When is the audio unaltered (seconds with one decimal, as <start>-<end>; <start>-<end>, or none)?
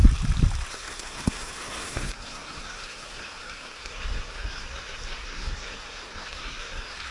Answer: 0.0-0.7